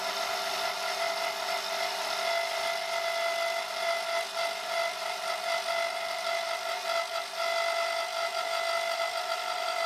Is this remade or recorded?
recorded